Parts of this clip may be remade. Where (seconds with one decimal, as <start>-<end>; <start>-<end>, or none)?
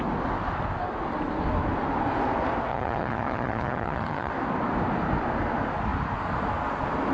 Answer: 2.7-4.3